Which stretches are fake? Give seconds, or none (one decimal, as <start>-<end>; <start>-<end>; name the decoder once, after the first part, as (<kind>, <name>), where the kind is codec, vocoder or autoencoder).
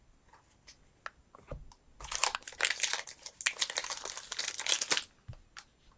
none